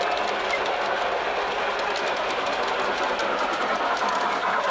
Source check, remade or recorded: recorded